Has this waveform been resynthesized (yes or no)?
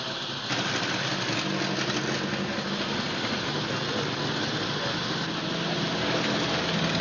no